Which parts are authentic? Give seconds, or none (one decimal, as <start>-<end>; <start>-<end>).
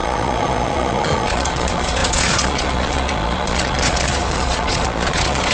none